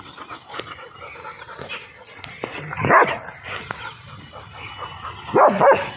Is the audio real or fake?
real